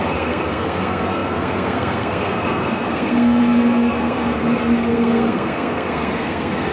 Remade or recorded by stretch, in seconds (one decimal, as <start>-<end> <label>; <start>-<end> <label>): 0.0-6.7 remade